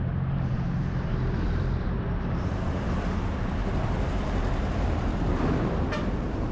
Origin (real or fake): fake